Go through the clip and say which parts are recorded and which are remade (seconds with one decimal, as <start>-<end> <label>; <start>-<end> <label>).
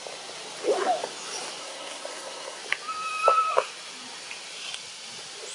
0.0-1.6 recorded; 1.6-2.6 remade; 2.6-5.5 recorded